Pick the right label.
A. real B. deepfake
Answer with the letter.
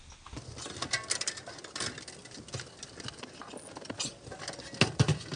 A